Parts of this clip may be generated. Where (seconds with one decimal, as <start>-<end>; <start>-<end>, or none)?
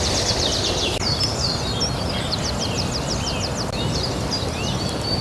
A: none